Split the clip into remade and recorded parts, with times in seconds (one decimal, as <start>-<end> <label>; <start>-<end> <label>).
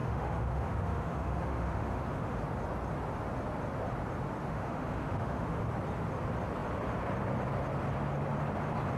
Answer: 0.0-2.4 remade; 2.4-4.4 recorded; 4.4-5.6 remade; 5.6-9.0 recorded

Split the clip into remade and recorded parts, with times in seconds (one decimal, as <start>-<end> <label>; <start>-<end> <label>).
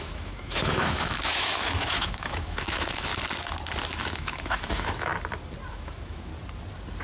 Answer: 0.0-3.1 remade; 3.1-4.0 recorded; 4.0-5.1 remade; 5.1-5.7 recorded; 5.7-6.3 remade; 6.3-7.0 recorded